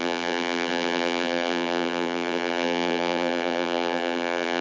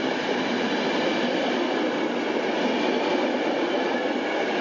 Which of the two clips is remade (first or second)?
first